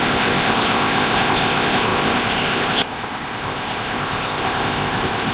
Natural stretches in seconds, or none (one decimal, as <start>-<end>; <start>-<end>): none